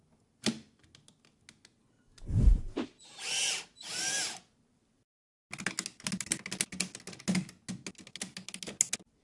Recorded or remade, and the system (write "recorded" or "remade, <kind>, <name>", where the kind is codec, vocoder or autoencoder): recorded